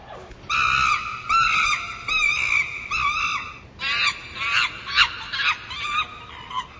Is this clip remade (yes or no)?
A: no